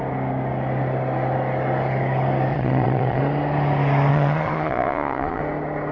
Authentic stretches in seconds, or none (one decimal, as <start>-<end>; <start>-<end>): 0.0-2.5; 3.2-4.1; 5.4-5.9